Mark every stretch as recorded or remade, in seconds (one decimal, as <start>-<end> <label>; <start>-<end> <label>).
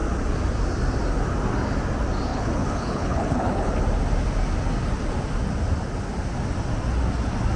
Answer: 0.0-2.3 recorded; 2.3-3.7 remade; 3.7-7.6 recorded